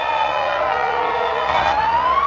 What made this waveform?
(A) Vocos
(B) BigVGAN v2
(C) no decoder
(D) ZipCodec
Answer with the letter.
A